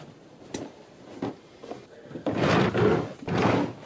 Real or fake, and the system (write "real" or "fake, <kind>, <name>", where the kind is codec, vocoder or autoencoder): real